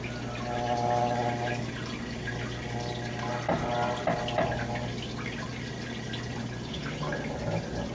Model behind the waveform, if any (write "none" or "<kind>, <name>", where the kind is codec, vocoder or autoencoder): none